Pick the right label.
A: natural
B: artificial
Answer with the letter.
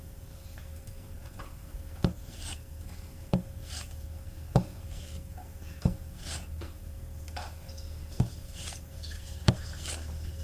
B